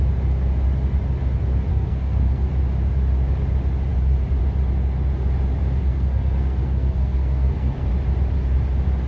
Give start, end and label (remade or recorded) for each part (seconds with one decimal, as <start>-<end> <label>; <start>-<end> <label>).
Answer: 0.0-1.7 recorded; 1.7-2.5 remade; 2.5-5.8 recorded; 5.8-7.9 remade; 7.9-9.1 recorded